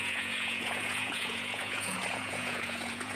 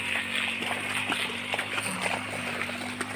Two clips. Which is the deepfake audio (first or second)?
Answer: first